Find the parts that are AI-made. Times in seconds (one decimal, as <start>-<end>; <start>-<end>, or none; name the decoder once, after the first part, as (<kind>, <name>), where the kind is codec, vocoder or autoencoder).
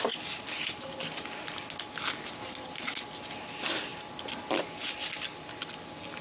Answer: none